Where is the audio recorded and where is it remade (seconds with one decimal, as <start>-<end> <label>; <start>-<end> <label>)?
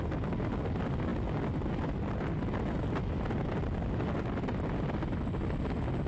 0.0-6.1 recorded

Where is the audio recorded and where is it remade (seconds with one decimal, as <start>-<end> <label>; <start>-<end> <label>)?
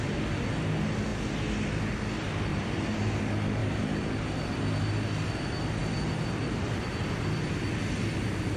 0.0-2.5 recorded; 2.5-3.2 remade; 3.2-3.6 recorded; 3.6-4.1 remade; 4.1-5.8 recorded; 5.8-7.0 remade; 7.0-8.6 recorded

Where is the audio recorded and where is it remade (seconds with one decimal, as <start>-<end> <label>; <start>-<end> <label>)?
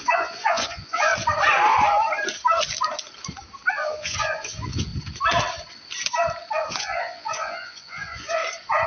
0.0-1.1 remade; 1.1-3.7 recorded; 3.7-4.9 remade; 4.9-6.7 recorded; 6.7-8.4 remade; 8.4-8.9 recorded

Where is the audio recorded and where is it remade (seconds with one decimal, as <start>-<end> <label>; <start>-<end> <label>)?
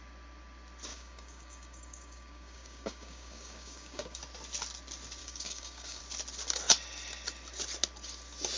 0.0-0.9 recorded; 0.9-4.2 remade; 4.2-5.2 recorded; 5.2-6.0 remade; 6.0-8.6 recorded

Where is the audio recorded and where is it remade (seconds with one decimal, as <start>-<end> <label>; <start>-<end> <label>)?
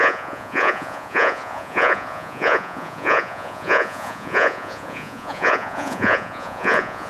0.0-7.1 remade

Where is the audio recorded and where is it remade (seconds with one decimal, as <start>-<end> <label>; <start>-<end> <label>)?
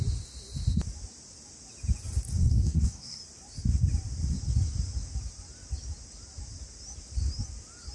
0.0-2.4 recorded; 2.4-3.2 remade; 3.2-7.9 recorded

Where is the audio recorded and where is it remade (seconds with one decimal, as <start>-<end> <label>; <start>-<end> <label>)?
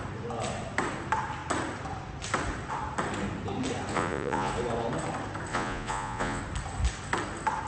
0.0-3.9 recorded; 3.9-4.5 remade; 4.5-5.5 recorded; 5.5-6.4 remade; 6.4-7.7 recorded